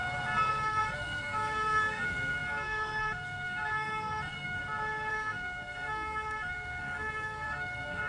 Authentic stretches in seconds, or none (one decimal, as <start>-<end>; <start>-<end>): 0.0-0.5; 4.6-5.1